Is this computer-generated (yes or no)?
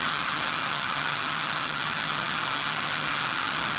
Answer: yes